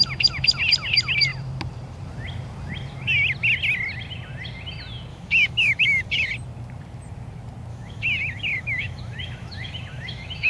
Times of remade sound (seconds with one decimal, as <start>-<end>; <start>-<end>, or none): 5.1-6.3; 7.7-10.5

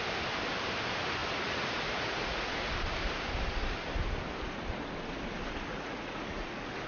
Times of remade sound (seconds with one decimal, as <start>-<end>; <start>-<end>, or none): 1.2-2.5; 5.7-6.5

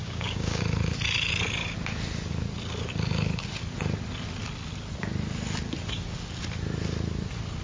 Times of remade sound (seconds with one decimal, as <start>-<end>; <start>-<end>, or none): 0.0-0.6

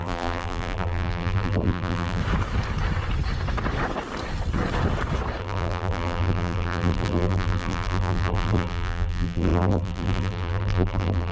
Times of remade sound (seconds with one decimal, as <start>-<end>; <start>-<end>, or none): 0.0-2.2; 5.4-11.3

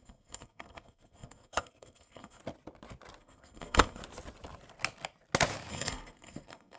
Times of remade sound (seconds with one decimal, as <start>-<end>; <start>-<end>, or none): 0.0-2.4; 3.2-4.0; 5.7-6.8

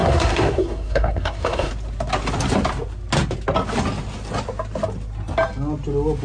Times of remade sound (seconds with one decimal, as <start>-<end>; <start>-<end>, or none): 0.0-1.7

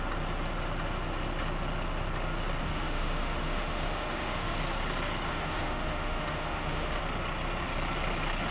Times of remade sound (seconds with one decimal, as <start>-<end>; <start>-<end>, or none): 2.6-4.6; 5.3-7.0